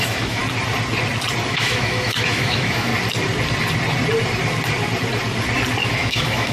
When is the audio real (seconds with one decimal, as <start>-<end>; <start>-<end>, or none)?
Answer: 0.4-1.5; 2.9-5.9